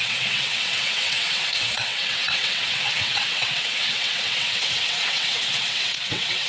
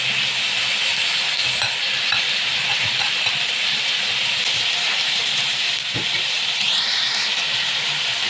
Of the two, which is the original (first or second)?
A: second